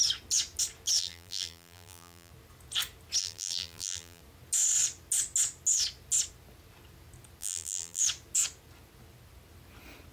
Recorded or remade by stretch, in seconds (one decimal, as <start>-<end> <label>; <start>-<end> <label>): 0.0-1.0 recorded; 1.0-2.3 remade; 2.3-3.2 recorded; 3.2-4.2 remade; 4.2-7.4 recorded; 7.4-8.0 remade; 8.0-10.1 recorded